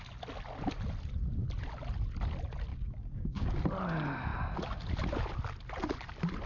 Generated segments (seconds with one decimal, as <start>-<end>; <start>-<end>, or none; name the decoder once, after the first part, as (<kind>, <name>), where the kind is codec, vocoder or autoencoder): 2.7-3.6 (codec, DAC)